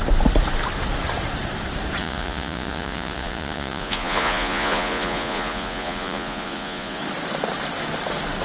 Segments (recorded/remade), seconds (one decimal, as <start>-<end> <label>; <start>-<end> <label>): 0.0-2.0 recorded; 2.0-7.0 remade; 7.0-8.4 recorded